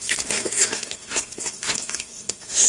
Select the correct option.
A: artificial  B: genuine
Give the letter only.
A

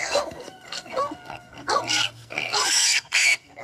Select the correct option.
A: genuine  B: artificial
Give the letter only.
B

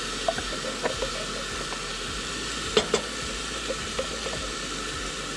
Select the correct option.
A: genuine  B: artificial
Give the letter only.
A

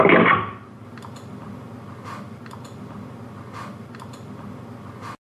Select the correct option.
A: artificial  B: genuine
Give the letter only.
B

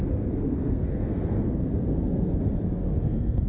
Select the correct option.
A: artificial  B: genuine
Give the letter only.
A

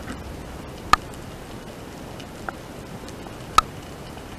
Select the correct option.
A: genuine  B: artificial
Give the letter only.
A